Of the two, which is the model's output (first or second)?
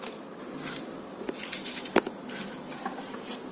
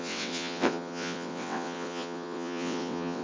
second